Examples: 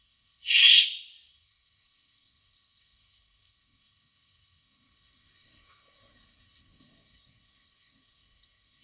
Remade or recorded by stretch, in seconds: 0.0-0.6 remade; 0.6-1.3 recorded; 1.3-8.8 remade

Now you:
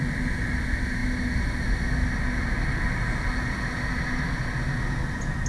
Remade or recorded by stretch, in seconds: 0.0-5.5 recorded

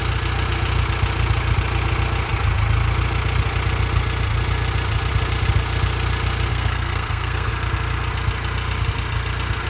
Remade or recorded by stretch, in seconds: 0.0-6.5 recorded; 6.5-7.5 remade; 7.5-9.7 recorded